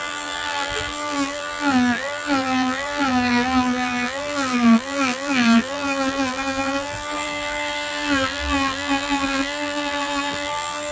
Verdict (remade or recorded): remade